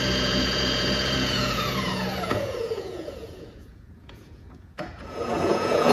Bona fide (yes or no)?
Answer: no